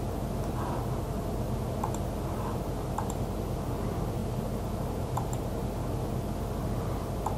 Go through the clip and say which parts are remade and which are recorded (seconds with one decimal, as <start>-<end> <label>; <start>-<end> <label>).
0.0-7.4 recorded